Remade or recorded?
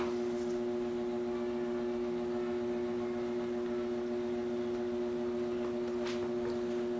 recorded